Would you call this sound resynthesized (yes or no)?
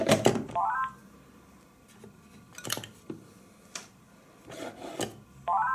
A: no